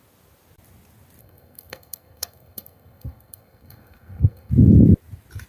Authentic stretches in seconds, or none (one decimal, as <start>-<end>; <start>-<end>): 0.0-1.2; 4.5-5.5